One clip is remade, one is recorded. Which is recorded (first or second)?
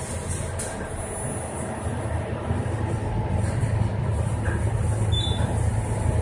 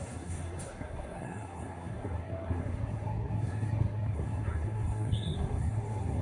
first